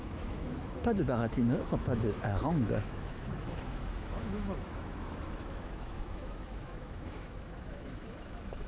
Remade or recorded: remade